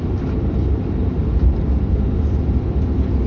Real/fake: real